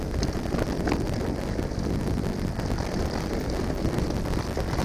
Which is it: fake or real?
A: real